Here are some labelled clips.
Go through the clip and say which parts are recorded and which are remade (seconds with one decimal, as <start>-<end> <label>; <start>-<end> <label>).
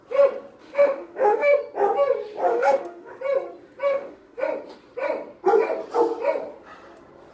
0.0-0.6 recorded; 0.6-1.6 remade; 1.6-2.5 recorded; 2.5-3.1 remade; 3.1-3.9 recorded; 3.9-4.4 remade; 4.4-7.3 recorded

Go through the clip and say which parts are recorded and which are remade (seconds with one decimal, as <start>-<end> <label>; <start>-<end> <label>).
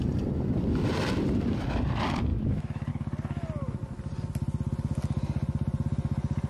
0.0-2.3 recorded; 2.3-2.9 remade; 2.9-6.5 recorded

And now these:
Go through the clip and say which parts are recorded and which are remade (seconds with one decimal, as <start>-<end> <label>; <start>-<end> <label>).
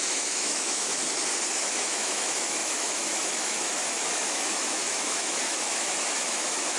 0.0-1.0 remade; 1.0-1.5 recorded; 1.5-6.8 remade